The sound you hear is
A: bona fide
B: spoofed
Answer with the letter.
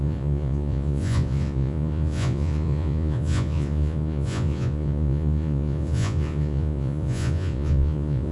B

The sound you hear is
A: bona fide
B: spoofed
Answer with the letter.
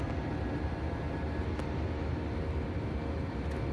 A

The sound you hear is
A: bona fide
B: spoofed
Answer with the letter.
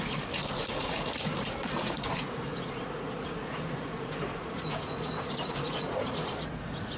B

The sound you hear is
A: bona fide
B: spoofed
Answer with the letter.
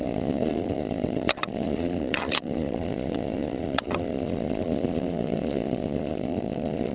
B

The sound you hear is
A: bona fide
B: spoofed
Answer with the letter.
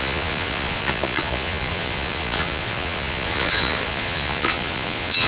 B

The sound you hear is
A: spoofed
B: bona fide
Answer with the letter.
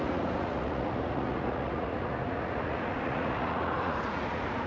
A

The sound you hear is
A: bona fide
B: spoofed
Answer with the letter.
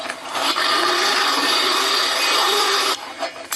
A